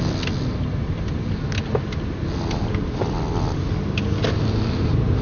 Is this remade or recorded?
recorded